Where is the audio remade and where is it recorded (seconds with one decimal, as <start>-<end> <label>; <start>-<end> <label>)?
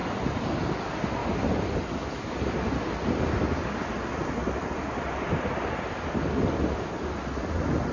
0.0-7.9 recorded